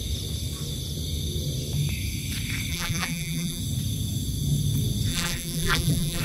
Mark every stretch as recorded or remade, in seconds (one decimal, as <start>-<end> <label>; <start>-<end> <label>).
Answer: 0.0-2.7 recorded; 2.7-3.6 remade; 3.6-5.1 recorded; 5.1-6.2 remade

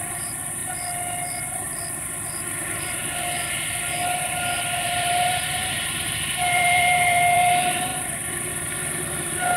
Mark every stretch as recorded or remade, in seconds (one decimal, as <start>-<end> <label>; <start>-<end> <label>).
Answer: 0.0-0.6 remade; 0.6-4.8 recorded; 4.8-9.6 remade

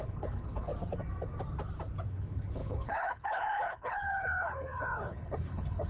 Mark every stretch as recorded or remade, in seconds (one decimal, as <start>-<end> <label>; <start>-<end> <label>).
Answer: 0.0-0.7 remade; 0.7-2.1 recorded; 2.1-5.9 remade

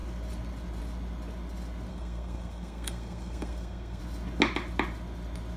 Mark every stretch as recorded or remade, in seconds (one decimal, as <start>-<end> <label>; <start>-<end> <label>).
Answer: 0.0-1.9 recorded; 1.9-4.0 remade; 4.0-5.6 recorded